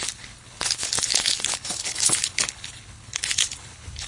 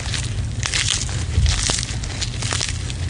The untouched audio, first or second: second